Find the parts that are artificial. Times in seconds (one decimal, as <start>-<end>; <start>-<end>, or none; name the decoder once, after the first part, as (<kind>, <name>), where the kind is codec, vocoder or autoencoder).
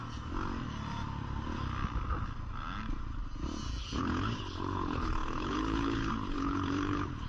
3.8-7.3 (codec, HILCodec)